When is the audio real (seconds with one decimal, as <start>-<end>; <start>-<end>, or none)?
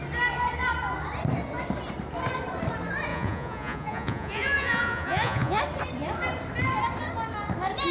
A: 0.0-3.1; 5.6-7.9